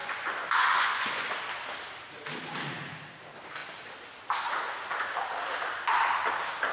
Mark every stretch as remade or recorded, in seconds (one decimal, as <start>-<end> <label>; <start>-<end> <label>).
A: 0.0-1.3 remade; 1.3-6.7 recorded